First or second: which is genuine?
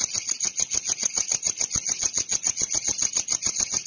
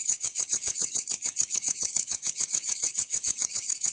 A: first